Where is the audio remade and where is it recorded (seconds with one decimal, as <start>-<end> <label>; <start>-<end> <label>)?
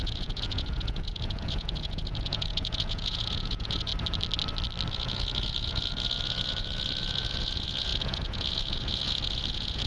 0.0-3.9 remade; 3.9-4.9 recorded; 4.9-9.9 remade